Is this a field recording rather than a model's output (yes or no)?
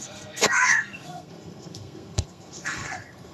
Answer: no